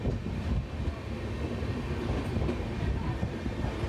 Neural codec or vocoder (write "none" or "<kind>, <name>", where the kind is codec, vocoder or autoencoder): none